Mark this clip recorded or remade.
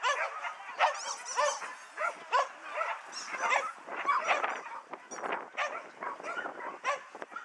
recorded